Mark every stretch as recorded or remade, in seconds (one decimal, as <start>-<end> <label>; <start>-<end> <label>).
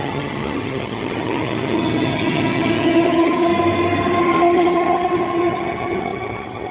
0.0-3.5 remade; 3.5-4.2 recorded; 4.2-6.7 remade